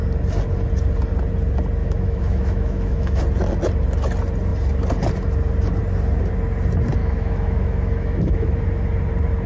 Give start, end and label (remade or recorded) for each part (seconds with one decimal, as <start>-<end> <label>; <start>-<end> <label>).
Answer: 0.0-1.8 recorded; 1.8-3.2 remade; 3.2-7.0 recorded; 7.0-8.6 remade; 8.6-9.5 recorded